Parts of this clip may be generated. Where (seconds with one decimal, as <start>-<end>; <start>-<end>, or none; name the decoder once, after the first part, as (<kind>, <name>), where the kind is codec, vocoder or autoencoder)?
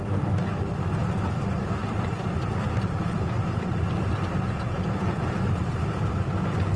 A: 1.8-5.9 (vocoder, BigVGAN v2)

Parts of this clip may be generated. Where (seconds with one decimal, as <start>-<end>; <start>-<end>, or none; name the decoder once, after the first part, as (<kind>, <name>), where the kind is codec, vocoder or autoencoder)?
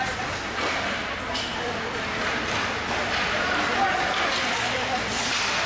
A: none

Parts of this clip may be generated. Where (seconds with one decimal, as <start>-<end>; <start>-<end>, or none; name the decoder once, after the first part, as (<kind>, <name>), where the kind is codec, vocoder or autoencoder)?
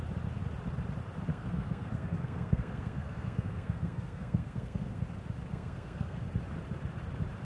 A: 1.3-5.0 (codec, SNAC); 5.5-6.2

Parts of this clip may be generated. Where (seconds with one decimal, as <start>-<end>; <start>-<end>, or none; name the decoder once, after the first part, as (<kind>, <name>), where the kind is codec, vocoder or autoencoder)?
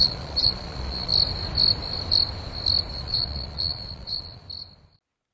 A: 0.0-1.1 (vocoder, Vocos); 2.9-4.4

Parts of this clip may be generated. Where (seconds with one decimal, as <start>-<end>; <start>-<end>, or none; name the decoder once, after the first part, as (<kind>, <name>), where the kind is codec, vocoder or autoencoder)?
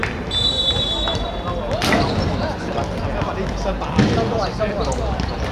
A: none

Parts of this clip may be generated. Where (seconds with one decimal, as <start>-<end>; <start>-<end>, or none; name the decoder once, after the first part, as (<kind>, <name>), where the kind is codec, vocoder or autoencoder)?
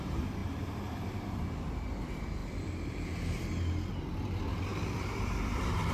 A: 0.0-2.4 (vocoder, BigVGAN v2); 3.9-5.9